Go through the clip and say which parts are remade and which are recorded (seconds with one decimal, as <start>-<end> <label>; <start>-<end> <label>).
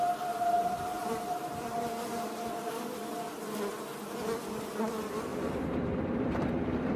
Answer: 0.0-5.3 recorded; 5.3-6.5 remade; 6.5-7.0 recorded